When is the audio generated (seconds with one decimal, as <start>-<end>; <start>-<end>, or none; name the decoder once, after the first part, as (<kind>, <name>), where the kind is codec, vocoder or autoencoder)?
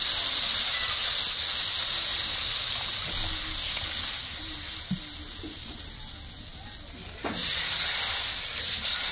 none